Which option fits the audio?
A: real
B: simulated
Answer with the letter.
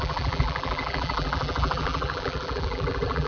B